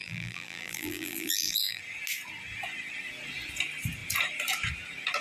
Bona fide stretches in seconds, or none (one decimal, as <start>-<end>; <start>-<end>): 1.8-5.2